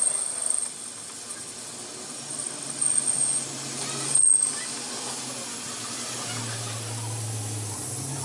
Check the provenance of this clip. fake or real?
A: real